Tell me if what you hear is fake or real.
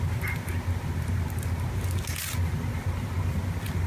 real